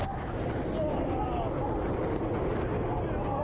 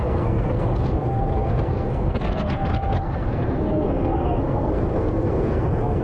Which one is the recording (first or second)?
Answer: first